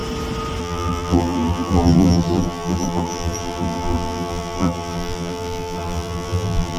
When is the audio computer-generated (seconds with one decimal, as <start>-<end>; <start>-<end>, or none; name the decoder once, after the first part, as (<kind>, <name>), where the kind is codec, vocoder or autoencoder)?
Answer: 0.6-6.8 (vocoder, BigVGAN v2)